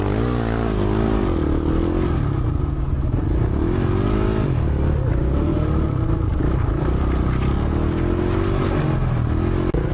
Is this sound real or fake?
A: real